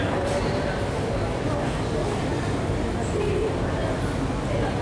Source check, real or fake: real